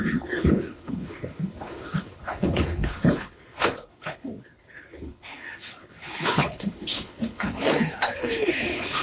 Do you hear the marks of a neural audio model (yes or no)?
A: yes